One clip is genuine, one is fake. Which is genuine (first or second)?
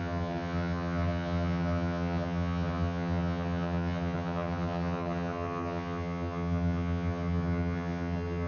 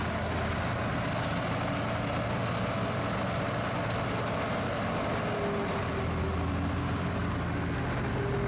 second